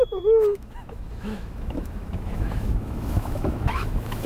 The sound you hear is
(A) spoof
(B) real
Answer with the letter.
A